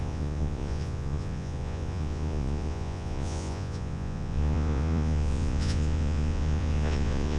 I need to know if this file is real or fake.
fake